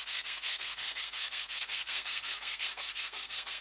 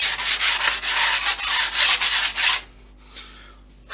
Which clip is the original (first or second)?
second